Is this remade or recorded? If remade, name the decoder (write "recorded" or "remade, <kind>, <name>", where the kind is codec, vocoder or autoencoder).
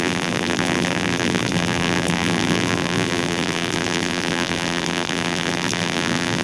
remade, vocoder, BigVGAN v2